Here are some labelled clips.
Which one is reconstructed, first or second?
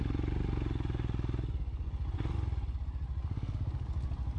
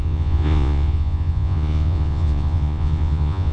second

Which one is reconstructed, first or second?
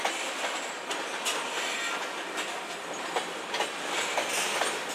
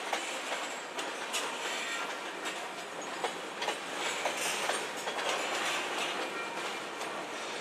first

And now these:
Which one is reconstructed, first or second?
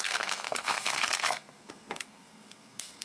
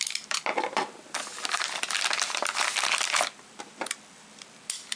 first